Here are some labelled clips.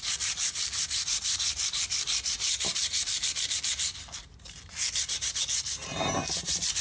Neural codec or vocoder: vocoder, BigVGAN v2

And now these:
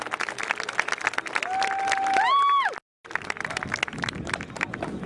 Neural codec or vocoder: none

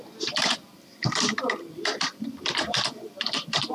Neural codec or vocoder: vocoder, BigVGAN v2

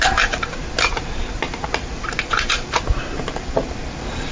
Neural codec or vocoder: vocoder, BigVGAN v2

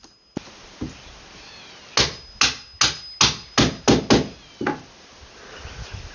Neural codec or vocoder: none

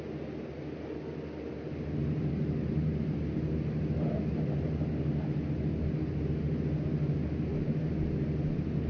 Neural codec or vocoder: none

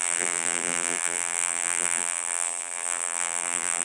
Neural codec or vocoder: vocoder, BigVGAN v2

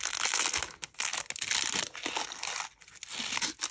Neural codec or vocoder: none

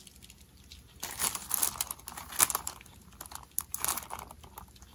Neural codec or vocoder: none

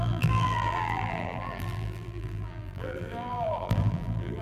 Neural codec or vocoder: vocoder, BigVGAN v2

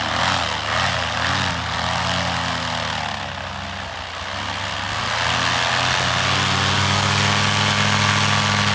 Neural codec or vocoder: none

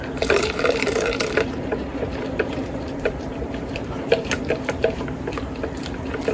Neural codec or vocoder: vocoder, BigVGAN v2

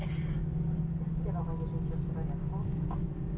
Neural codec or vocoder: none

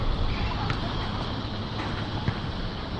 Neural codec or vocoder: none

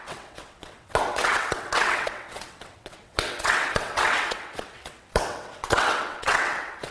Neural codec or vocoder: vocoder, WaveNeXt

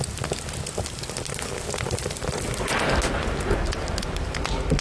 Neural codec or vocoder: none